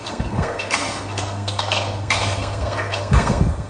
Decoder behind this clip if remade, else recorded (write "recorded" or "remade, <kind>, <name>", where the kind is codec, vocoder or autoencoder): remade, codec, SNAC